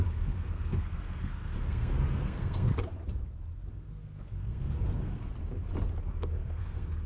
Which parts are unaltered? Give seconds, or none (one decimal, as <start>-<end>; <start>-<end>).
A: 2.7-3.7; 5.3-6.0